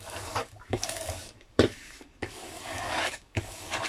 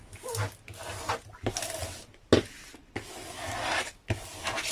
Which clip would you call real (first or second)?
second